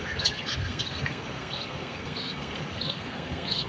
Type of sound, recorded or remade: remade